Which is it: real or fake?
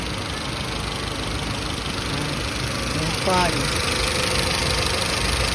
real